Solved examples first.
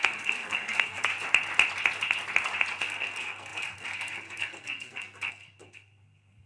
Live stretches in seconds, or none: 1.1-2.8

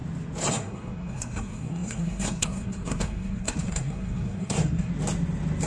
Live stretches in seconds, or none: 0.0-0.5; 4.9-5.7